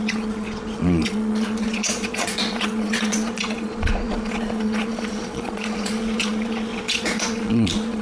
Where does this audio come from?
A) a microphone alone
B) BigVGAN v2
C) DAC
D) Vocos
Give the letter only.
D